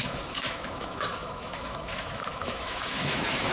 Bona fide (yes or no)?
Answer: no